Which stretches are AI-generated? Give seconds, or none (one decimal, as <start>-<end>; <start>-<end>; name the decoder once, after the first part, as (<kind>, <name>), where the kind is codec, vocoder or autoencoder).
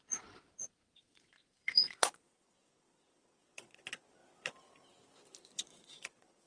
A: 0.0-4.2 (vocoder, Vocos); 5.4-6.5